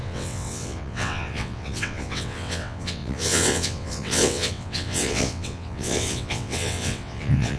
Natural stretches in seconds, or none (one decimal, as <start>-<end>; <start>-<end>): none